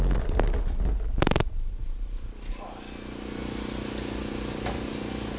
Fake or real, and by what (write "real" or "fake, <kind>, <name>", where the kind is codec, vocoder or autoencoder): real